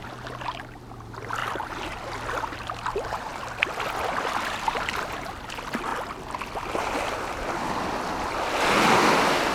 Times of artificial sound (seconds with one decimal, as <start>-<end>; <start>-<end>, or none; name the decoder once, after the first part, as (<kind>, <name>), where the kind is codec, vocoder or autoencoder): 1.4-2.0 (vocoder, BigVGAN v2)